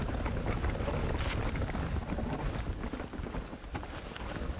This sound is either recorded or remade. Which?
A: recorded